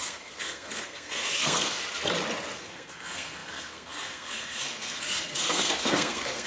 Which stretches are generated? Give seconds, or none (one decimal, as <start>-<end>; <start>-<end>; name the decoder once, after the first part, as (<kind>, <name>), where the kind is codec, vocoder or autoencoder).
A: 0.0-1.8 (codec, SNAC); 2.6-6.5